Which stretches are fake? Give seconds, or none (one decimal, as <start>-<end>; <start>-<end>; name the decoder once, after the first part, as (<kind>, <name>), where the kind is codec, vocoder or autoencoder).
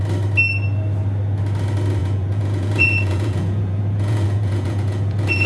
2.0-5.5 (vocoder, Vocos)